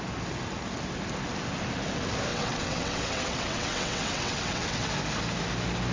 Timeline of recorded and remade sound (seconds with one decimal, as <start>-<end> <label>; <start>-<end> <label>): 0.0-2.3 recorded; 2.3-4.9 remade; 4.9-5.9 recorded